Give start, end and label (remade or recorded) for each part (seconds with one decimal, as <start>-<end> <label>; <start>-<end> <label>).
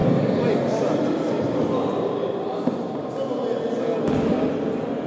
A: 0.0-5.1 recorded